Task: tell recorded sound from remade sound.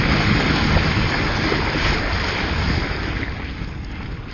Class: recorded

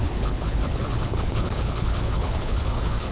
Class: remade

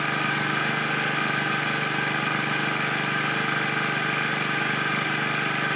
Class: recorded